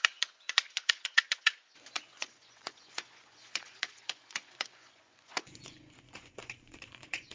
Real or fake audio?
fake